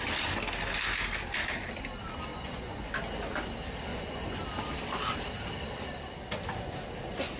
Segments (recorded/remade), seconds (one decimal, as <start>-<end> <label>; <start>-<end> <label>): 0.0-2.3 recorded; 2.3-2.9 remade; 2.9-3.9 recorded; 3.9-4.4 remade; 4.4-7.4 recorded

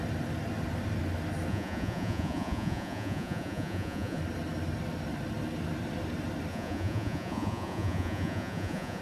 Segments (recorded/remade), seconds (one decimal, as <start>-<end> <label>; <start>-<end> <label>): 0.0-1.5 recorded; 1.5-4.2 remade; 4.2-6.5 recorded; 6.5-9.0 remade

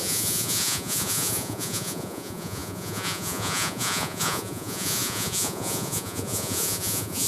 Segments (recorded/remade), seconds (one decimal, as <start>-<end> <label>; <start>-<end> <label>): 0.0-7.3 remade

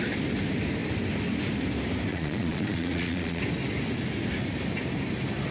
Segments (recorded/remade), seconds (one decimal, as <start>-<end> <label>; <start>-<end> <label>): 0.0-2.1 recorded; 2.1-3.4 remade; 3.4-5.5 recorded

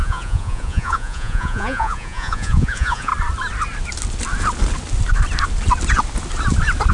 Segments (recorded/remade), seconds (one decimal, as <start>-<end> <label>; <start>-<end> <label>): 0.0-3.1 remade; 3.1-6.9 recorded

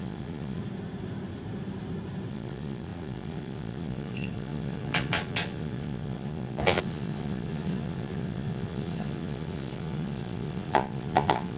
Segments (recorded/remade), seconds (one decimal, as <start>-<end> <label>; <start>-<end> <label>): 0.0-0.6 remade; 0.6-2.3 recorded; 2.3-11.6 remade

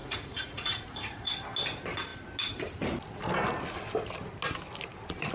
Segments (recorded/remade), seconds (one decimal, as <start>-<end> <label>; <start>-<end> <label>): 0.0-1.3 remade; 1.3-5.3 recorded